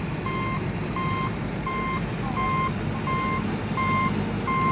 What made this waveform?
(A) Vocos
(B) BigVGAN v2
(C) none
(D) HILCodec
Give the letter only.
C